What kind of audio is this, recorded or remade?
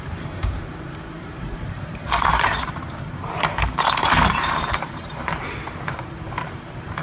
remade